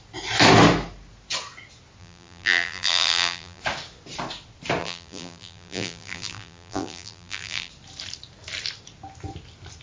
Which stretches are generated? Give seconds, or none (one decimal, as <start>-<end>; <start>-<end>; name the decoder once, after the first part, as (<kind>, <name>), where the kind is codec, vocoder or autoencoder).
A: 2.0-3.6 (vocoder, BigVGAN v2); 4.8-7.7